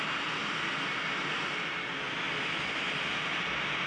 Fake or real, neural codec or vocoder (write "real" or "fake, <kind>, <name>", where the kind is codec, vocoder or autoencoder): real